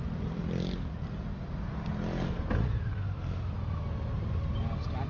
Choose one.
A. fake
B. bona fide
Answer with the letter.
B